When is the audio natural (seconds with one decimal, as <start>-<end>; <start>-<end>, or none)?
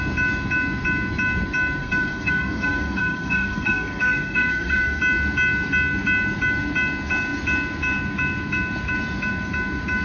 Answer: 0.0-1.8; 5.0-10.0